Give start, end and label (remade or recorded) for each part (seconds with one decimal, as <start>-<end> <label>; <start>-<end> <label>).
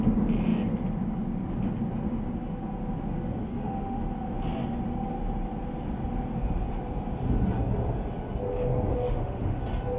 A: 0.0-3.4 recorded; 3.4-4.0 remade; 4.0-8.9 recorded; 8.9-9.6 remade; 9.6-10.0 recorded